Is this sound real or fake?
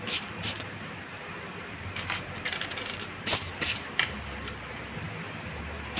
fake